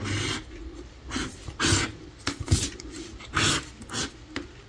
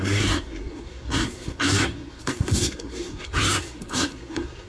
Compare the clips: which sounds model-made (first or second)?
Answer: second